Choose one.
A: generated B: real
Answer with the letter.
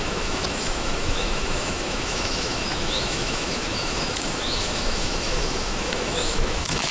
A